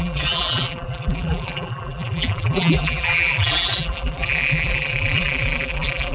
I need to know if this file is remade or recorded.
remade